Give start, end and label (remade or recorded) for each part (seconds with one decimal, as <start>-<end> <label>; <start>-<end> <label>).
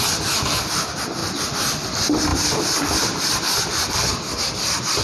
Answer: 0.0-1.2 recorded; 1.2-1.9 remade; 1.9-5.0 recorded